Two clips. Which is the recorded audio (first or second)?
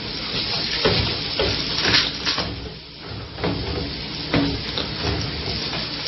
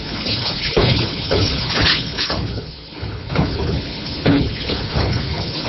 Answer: first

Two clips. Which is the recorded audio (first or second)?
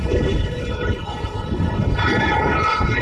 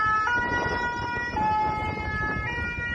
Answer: second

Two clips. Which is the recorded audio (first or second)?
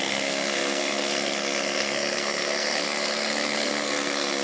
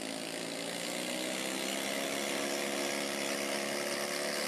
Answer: second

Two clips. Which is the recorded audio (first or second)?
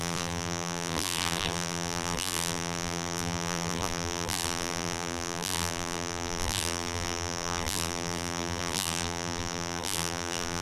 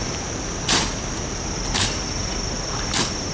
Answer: second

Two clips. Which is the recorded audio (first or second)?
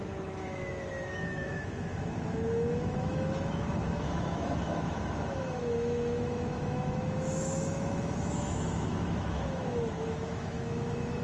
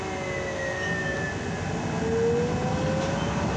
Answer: second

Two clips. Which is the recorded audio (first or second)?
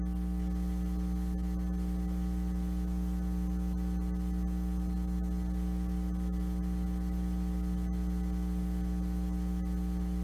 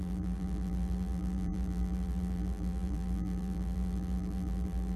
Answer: first